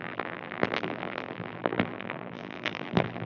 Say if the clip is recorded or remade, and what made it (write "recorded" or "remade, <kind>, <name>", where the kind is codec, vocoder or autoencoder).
remade, vocoder, BigVGAN v2